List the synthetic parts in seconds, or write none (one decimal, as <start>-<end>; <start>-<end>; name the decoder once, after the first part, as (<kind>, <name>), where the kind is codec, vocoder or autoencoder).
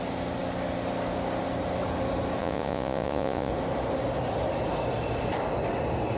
2.4-3.5 (vocoder, Vocos)